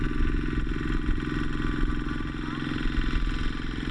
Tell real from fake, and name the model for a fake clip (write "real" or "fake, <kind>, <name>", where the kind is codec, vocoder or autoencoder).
real